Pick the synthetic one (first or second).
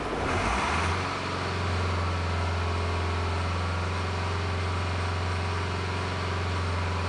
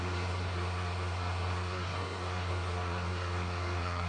second